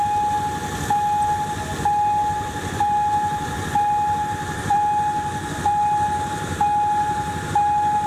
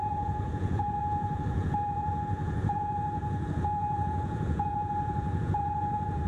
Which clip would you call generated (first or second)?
second